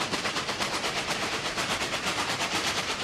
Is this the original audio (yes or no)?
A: no